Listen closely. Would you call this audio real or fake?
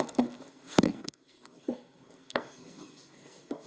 fake